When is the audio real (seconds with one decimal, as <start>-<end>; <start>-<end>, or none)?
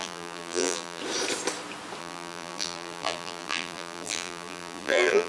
1.0-2.0